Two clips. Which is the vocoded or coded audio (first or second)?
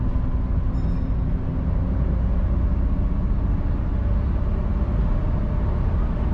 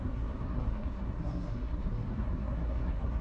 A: second